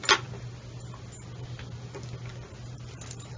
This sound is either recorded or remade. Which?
recorded